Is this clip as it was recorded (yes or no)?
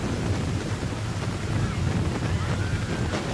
yes